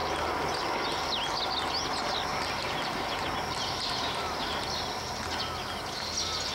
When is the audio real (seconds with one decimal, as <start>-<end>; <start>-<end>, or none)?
0.0-2.3; 4.4-6.5